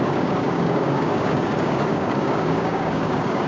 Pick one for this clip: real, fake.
fake